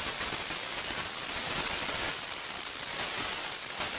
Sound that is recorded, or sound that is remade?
recorded